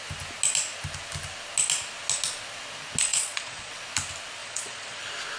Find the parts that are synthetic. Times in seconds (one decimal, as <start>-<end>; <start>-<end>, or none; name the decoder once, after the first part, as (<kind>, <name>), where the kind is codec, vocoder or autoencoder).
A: 3.1-3.7 (vocoder, Vocos); 4.4-5.0